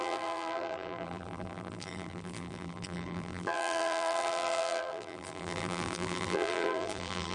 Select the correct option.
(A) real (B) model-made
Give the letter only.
B